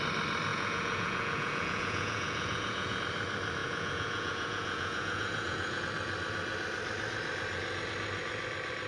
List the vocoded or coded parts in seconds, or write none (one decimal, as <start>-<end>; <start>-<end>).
0.5-3.0; 3.6-5.8